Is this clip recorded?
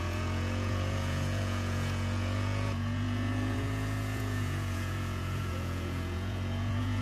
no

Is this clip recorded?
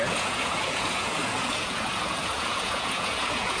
no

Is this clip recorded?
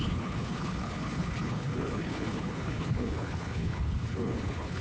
no